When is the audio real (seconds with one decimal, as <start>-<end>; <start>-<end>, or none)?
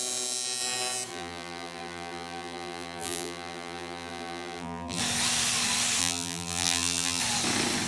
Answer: 0.0-1.1; 5.0-6.0; 7.2-7.9